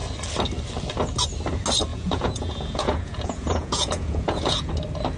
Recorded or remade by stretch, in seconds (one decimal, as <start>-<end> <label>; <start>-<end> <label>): 0.0-1.9 recorded; 1.9-4.7 remade; 4.7-5.2 recorded